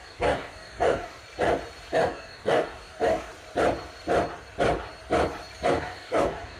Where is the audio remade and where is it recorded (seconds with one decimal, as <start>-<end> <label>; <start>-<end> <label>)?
0.0-1.2 remade; 1.2-1.9 recorded; 1.9-3.3 remade; 3.3-5.7 recorded; 5.7-6.6 remade